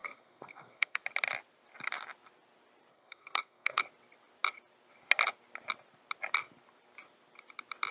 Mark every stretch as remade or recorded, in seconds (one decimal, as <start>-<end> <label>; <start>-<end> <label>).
0.0-1.0 remade; 1.0-2.9 recorded; 2.9-3.8 remade; 3.8-7.9 recorded